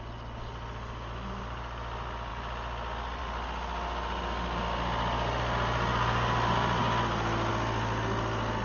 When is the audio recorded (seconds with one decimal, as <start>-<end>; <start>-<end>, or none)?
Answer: 0.0-8.6

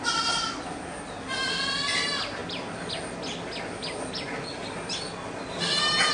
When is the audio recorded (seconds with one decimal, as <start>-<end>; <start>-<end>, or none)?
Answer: 0.0-6.1

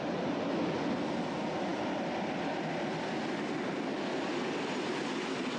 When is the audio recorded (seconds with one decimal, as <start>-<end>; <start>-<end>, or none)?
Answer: none

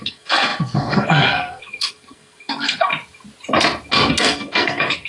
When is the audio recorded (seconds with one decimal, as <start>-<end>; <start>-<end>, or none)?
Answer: 2.9-4.1

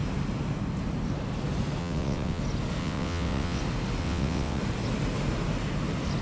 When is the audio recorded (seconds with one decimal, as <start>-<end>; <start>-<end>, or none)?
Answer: 0.0-1.8; 2.4-2.8; 3.6-4.0; 4.6-6.2